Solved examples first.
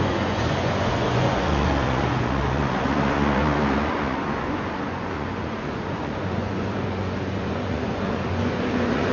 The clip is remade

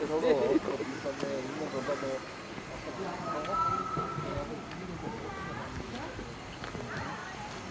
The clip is recorded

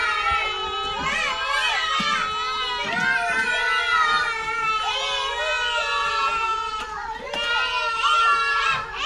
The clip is recorded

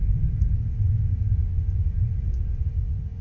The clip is recorded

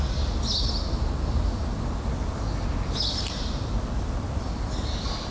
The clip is recorded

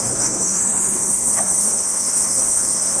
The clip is remade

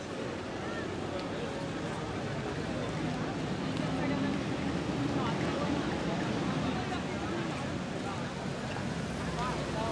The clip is recorded